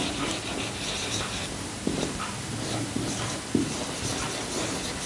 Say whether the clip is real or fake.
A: real